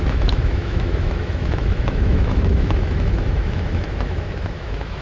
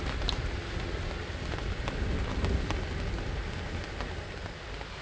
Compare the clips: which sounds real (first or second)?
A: second